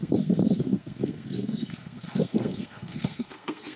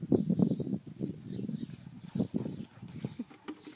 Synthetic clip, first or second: first